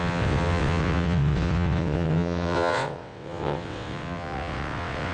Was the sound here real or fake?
fake